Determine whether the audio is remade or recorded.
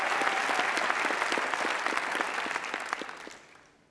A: recorded